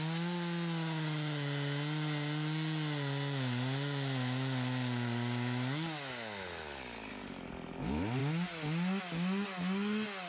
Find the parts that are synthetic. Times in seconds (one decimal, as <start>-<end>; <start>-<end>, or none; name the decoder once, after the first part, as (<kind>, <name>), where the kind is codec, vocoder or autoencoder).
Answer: none